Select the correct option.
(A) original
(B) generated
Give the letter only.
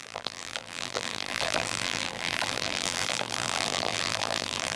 B